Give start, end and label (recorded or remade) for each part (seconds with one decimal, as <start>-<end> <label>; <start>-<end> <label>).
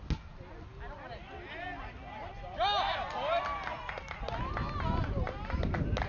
0.0-6.1 recorded